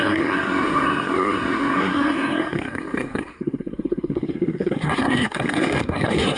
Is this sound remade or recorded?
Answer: remade